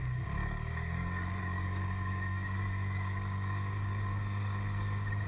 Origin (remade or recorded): remade